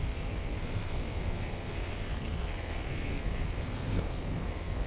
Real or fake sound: fake